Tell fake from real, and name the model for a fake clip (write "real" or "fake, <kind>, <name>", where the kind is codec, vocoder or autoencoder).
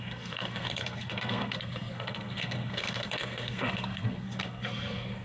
fake, codec, SNAC